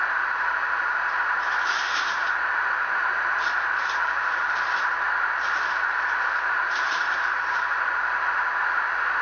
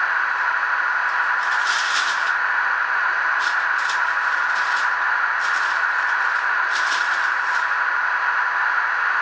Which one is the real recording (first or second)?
second